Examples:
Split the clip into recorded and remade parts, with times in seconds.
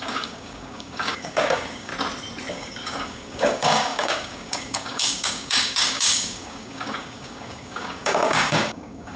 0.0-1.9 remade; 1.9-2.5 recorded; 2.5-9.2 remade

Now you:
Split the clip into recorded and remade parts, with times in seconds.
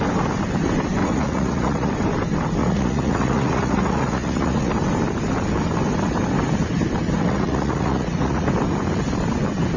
0.0-1.0 recorded; 1.0-1.9 remade; 1.9-2.6 recorded; 2.6-4.7 remade; 4.7-7.2 recorded; 7.2-8.5 remade; 8.5-9.8 recorded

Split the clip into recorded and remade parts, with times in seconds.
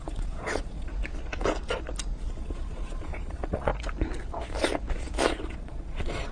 0.0-0.9 remade; 0.9-2.4 recorded; 2.4-3.7 remade; 3.7-5.3 recorded; 5.3-6.3 remade